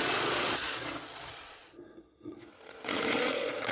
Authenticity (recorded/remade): remade